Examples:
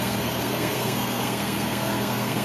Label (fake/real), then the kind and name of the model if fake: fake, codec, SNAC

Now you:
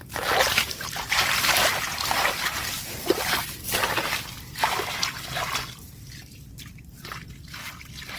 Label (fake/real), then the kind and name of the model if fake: real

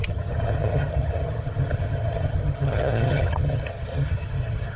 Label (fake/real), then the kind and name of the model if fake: fake, vocoder, HiFi-GAN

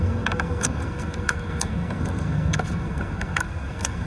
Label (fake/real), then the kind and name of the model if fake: fake, codec, SNAC